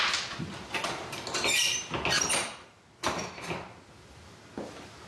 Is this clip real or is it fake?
real